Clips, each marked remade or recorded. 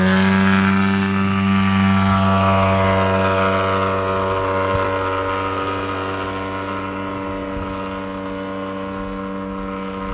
recorded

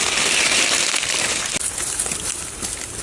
recorded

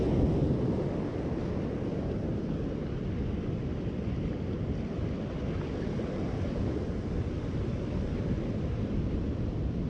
recorded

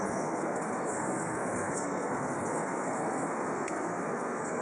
remade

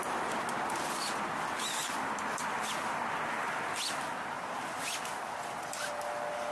recorded